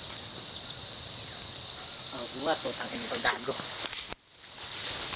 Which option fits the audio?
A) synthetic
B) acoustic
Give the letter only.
B